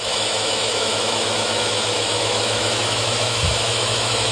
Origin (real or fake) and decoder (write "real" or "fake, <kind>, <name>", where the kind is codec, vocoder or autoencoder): fake, autoencoder, DAC-VAE